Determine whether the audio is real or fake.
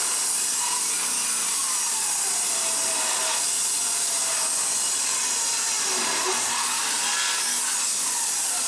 real